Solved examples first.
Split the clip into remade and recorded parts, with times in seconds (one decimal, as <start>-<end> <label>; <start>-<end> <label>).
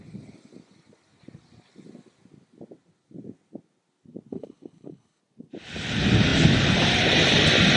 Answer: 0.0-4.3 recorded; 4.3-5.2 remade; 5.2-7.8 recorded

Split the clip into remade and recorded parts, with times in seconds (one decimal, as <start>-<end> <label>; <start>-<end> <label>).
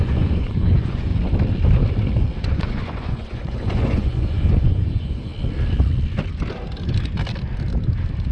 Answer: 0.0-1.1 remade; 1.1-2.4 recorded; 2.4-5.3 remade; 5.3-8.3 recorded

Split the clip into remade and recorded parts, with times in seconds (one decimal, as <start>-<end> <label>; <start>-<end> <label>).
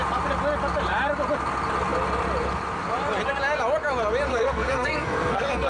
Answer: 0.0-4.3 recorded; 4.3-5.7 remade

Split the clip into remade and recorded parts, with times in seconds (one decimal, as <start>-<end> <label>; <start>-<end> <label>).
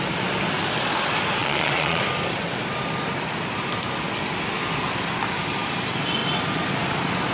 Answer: 0.0-1.4 recorded; 1.4-2.0 remade; 2.0-7.3 recorded